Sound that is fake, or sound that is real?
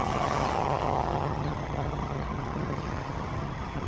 fake